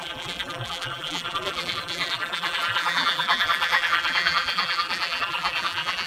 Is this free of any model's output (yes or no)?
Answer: no